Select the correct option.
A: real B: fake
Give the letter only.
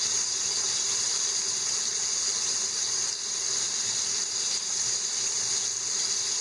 A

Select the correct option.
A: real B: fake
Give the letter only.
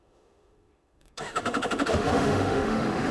B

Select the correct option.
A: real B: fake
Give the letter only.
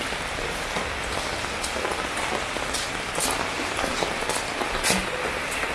A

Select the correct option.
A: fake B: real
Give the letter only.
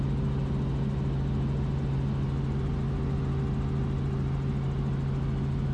B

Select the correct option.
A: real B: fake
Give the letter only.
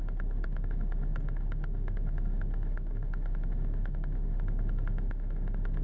B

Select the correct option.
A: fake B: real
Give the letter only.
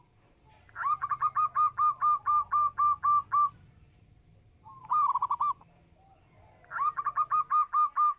B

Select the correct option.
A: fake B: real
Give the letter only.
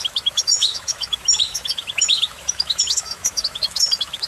A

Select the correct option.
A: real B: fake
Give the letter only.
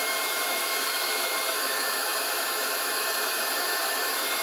B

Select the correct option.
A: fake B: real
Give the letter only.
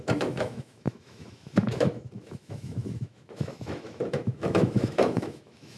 A